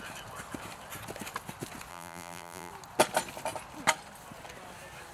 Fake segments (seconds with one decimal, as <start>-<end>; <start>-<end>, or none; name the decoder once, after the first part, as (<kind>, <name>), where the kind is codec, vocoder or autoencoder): 1.9-2.7 (vocoder, BigVGAN v2)